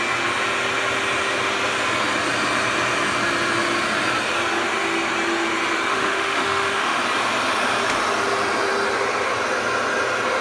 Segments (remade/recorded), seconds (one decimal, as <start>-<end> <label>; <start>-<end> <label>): 0.0-5.9 recorded; 5.9-7.0 remade; 7.0-10.4 recorded